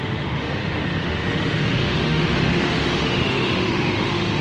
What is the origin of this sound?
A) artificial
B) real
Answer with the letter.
A